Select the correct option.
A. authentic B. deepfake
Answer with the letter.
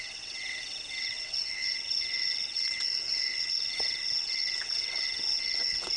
B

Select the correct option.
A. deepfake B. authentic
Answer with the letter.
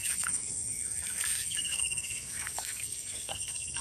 A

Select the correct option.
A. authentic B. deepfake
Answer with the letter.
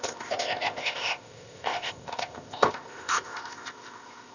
B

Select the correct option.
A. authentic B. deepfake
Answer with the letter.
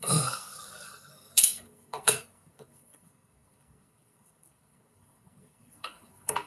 B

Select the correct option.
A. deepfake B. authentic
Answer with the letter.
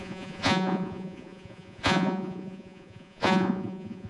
A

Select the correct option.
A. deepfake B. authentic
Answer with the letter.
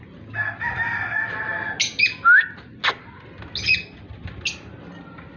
B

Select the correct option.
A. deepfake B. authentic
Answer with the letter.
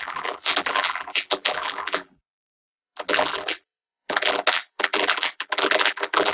A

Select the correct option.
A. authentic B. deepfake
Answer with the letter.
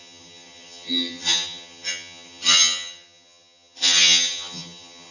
B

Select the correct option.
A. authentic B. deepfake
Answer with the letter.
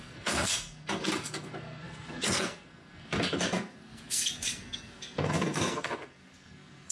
B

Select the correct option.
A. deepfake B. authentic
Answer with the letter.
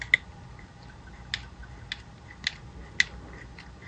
B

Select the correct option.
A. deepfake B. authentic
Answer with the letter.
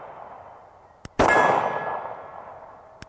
B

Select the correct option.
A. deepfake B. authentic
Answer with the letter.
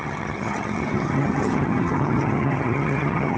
A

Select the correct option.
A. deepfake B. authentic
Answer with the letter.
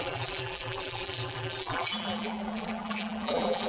A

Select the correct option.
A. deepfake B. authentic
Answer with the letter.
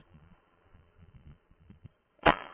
A